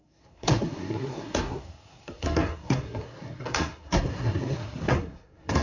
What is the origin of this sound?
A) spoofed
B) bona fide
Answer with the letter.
A